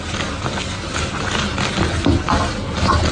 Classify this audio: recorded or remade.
recorded